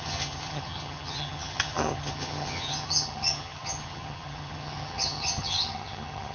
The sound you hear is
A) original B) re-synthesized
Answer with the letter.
B